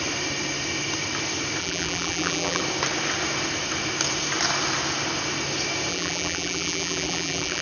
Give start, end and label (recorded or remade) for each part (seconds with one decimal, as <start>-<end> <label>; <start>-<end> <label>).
0.0-1.6 recorded; 1.6-2.6 remade; 2.6-5.9 recorded; 5.9-7.6 remade